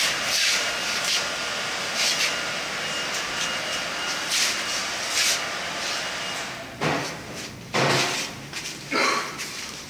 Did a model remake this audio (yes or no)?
yes